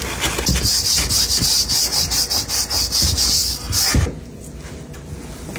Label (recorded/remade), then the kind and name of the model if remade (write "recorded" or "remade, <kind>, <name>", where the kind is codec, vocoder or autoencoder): recorded